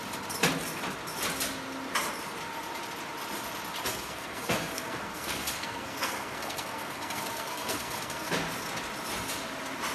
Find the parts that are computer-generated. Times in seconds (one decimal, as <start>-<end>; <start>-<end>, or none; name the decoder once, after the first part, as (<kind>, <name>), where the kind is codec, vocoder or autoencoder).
3.9-8.3 (codec, SNAC)